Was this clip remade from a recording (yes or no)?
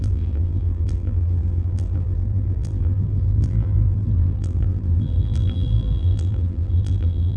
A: yes